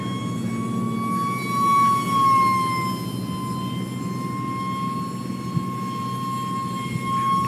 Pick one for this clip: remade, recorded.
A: recorded